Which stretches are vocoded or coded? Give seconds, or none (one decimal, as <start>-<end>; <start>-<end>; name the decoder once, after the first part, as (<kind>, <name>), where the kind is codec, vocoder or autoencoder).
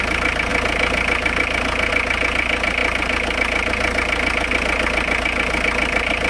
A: none